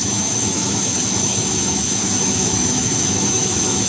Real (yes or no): no